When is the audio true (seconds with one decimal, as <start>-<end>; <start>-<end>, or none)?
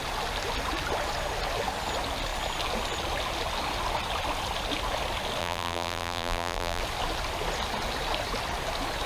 0.0-5.4; 6.8-9.1